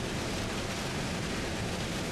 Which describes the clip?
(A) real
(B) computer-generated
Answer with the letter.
A